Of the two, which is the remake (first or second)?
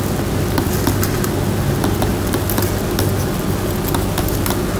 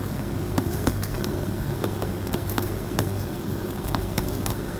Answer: second